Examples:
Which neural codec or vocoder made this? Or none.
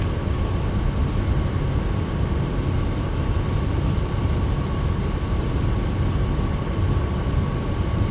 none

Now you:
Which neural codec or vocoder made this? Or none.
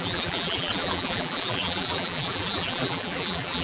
vocoder, BigVGAN v2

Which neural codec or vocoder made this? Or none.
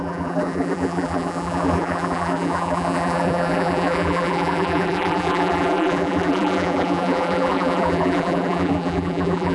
vocoder, BigVGAN v2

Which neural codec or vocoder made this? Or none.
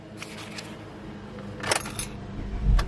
none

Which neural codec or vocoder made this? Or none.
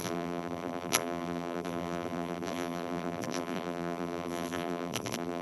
vocoder, BigVGAN v2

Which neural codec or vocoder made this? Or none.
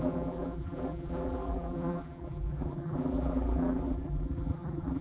vocoder, BigVGAN v2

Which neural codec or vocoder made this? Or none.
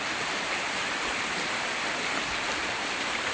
vocoder, BigVGAN v2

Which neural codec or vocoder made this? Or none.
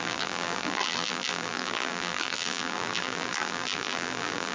vocoder, BigVGAN v2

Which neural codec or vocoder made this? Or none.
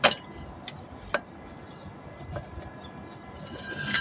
none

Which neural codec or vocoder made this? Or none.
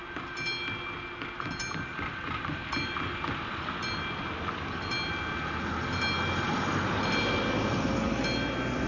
none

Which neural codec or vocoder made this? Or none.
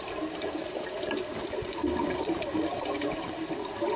none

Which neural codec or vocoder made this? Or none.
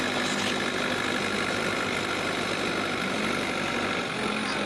vocoder, BigVGAN v2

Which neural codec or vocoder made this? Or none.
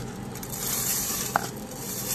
none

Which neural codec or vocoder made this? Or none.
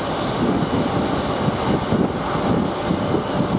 none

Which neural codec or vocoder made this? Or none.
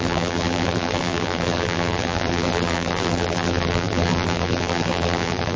vocoder, BigVGAN v2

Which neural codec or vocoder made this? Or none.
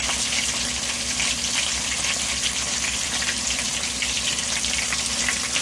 vocoder, BigVGAN v2